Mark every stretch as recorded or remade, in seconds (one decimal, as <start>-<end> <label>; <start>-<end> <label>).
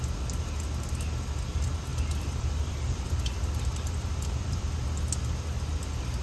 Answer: 0.0-1.9 recorded; 1.9-4.7 remade; 4.7-6.2 recorded